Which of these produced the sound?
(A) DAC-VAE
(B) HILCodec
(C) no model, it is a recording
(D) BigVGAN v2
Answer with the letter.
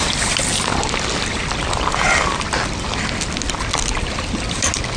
C